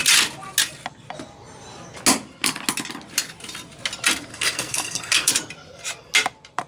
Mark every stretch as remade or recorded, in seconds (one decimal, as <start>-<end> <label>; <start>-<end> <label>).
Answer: 0.0-4.3 recorded; 4.3-5.3 remade; 5.3-6.7 recorded

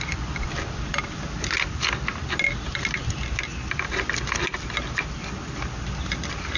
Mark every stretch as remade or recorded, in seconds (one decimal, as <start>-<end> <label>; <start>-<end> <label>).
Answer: 0.0-6.6 recorded

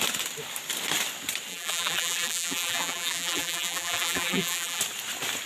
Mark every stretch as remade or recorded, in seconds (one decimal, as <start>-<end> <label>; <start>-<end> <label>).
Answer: 0.0-1.5 recorded; 1.5-4.8 remade; 4.8-5.5 recorded

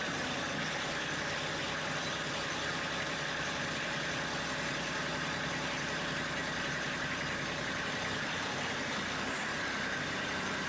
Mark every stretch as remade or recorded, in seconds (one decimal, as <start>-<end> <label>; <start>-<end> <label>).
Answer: 0.0-6.4 remade; 6.4-7.0 recorded; 7.0-10.7 remade

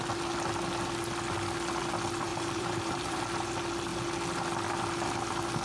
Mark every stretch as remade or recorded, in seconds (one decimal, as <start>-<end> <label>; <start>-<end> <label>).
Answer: 0.0-2.3 recorded; 2.3-3.2 remade; 3.2-5.6 recorded

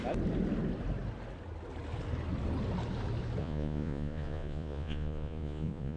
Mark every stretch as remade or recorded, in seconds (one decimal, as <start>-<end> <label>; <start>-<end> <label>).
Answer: 0.0-3.4 recorded; 3.4-6.0 remade